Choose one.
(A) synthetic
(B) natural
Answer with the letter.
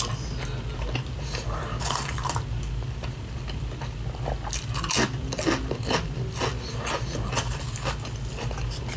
B